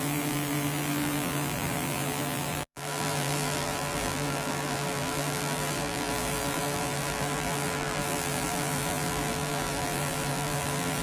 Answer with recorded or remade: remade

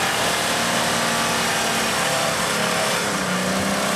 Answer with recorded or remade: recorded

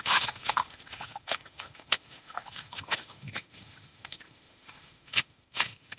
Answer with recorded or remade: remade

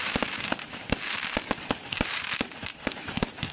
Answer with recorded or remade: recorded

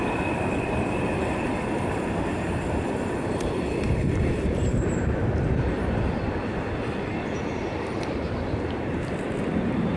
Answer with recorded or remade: remade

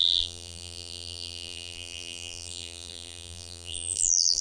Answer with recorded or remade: remade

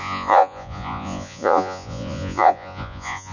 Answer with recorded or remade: remade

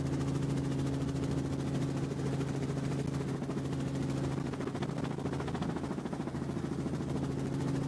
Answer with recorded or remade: recorded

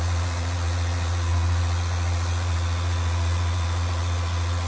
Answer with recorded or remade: remade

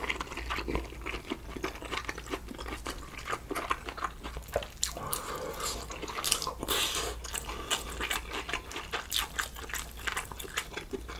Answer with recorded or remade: recorded